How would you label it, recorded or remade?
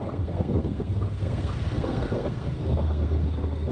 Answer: remade